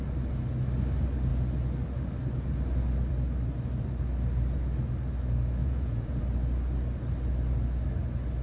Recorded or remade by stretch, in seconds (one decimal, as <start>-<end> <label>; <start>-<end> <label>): 0.0-5.6 recorded; 5.6-6.2 remade; 6.2-8.4 recorded

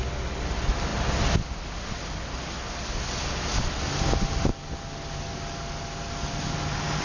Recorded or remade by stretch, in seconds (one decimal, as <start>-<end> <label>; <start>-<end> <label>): 0.0-7.0 recorded

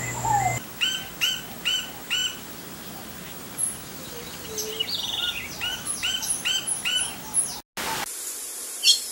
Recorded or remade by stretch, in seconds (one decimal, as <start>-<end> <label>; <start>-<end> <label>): 0.0-2.2 recorded; 2.2-7.1 remade; 7.1-9.1 recorded

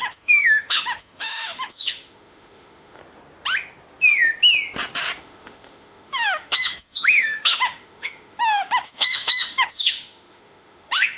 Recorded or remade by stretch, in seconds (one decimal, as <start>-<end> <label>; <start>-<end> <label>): 0.0-3.0 remade; 3.0-5.2 recorded; 5.2-11.2 remade

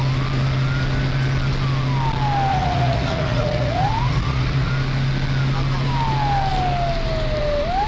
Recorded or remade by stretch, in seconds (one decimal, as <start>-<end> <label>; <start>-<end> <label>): 0.0-2.5 recorded; 2.5-4.7 remade; 4.7-7.9 recorded

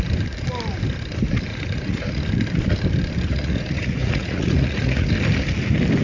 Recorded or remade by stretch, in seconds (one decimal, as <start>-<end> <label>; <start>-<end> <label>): 0.0-1.5 recorded; 1.5-2.2 remade; 2.2-3.3 recorded; 3.3-5.1 remade; 5.1-6.0 recorded

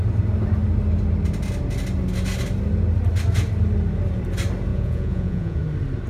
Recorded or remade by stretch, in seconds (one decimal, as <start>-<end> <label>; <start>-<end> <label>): 0.0-4.7 recorded; 4.7-5.6 remade; 5.6-6.1 recorded

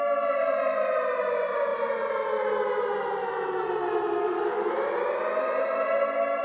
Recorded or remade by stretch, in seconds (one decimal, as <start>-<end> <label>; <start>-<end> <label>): 0.0-4.2 recorded; 4.2-4.7 remade; 4.7-6.4 recorded